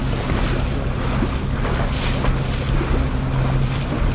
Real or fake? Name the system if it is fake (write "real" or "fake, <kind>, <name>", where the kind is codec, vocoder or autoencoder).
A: real